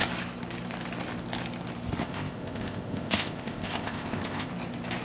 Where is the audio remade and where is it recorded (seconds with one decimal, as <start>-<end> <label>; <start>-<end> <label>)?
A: 0.0-2.0 recorded; 2.0-4.5 remade; 4.5-5.0 recorded